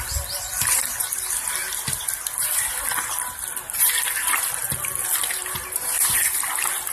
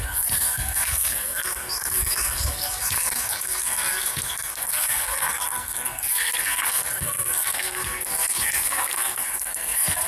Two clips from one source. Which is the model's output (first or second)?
second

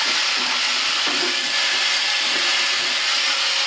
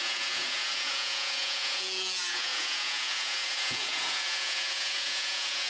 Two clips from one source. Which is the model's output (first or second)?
second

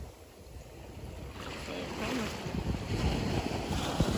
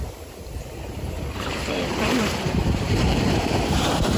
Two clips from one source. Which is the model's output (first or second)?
second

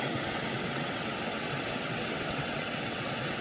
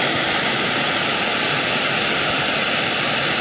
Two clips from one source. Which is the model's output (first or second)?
first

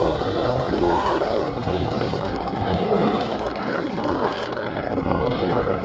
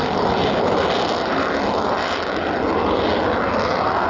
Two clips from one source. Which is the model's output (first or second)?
first